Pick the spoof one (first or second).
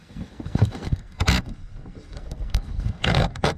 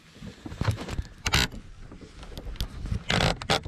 first